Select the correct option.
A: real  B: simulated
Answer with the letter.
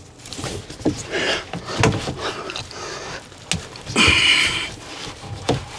A